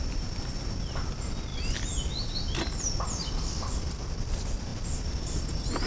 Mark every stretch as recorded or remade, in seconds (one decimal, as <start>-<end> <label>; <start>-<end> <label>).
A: 0.0-5.9 recorded